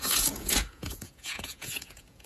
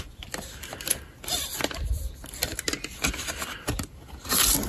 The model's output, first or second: first